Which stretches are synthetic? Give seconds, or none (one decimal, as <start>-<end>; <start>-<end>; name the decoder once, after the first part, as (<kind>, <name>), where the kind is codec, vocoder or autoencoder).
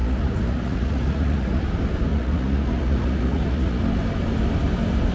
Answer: 0.0-1.6 (vocoder, Vocos); 2.1-3.8